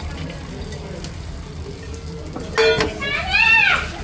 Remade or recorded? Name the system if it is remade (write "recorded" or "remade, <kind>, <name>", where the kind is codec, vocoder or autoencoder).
recorded